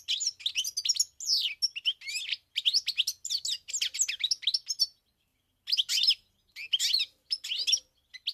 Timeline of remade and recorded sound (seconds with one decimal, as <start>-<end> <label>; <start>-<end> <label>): 0.0-8.3 recorded